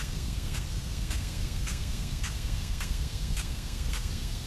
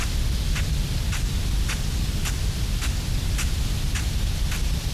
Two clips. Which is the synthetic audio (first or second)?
first